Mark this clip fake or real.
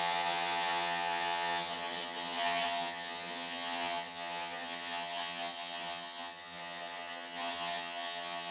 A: fake